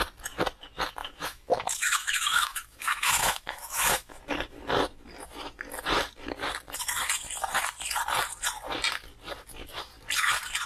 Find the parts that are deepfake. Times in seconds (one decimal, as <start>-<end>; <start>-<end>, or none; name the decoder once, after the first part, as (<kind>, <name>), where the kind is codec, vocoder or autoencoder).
1.0-4.2 (autoencoder, DAC-VAE)